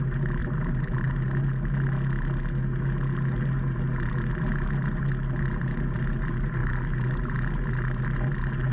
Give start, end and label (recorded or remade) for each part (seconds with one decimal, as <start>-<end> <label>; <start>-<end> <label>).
0.0-0.4 recorded; 0.4-1.4 remade; 1.4-8.7 recorded